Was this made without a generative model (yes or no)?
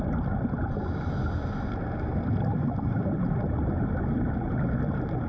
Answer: yes